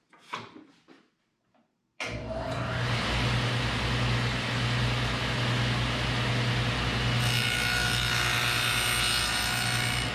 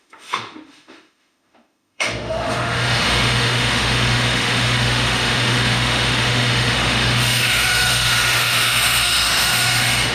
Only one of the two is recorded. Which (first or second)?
first